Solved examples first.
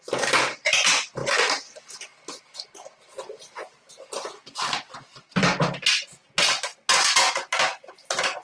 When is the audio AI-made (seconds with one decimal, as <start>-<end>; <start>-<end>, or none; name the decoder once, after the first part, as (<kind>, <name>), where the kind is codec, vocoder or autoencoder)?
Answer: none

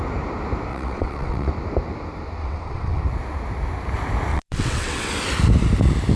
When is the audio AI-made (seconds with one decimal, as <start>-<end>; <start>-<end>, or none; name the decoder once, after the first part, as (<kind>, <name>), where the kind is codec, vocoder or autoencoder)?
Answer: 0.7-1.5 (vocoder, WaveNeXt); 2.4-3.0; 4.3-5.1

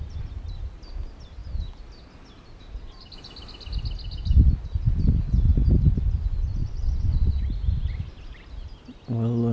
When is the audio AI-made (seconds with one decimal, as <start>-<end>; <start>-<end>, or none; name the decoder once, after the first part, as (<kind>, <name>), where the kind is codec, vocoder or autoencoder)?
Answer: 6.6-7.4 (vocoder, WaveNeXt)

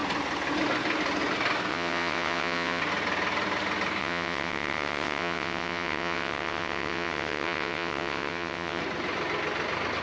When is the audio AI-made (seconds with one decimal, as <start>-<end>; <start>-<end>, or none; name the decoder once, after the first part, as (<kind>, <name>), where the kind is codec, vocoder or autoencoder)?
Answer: 1.7-2.8 (vocoder, WaveNeXt); 4.0-8.8

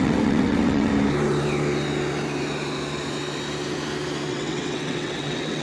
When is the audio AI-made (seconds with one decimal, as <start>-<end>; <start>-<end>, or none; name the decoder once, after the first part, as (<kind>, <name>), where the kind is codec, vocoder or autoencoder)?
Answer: 0.0-0.9 (vocoder, WaveNeXt); 4.3-5.6

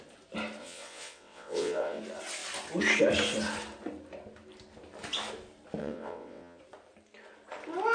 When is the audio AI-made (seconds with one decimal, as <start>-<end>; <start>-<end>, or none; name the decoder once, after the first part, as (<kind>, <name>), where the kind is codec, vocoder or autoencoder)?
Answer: 0.6-2.0 (vocoder, WaveNeXt); 5.8-6.6

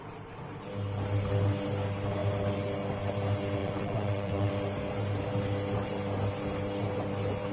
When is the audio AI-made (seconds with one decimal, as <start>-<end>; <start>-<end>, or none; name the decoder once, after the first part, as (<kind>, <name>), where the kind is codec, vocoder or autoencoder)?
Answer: 3.6-4.5 (vocoder, WaveNeXt)

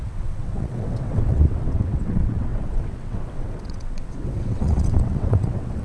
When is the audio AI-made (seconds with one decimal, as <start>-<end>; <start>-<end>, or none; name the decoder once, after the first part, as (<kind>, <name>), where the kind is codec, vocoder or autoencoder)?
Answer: 0.0-5.8 (vocoder, WaveNeXt)